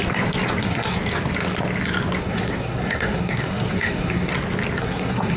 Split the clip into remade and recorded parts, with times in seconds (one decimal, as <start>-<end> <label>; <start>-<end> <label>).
0.0-0.6 recorded; 0.6-1.0 remade; 1.0-2.2 recorded; 2.2-4.3 remade; 4.3-4.8 recorded; 4.8-5.4 remade